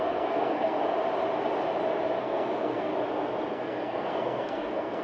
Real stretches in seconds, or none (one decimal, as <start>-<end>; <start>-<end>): 0.8-2.2; 2.9-3.5